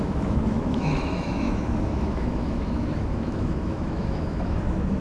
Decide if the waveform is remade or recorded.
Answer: remade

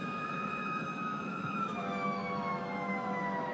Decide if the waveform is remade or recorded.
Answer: remade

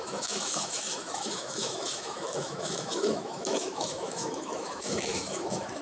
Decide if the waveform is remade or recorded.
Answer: remade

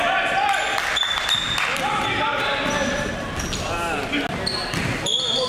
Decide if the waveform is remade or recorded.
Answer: recorded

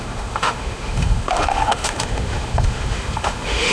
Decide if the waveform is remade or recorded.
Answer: remade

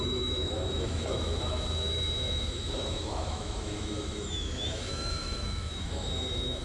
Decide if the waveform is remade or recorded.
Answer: remade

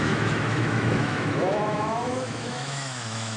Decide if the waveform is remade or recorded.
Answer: remade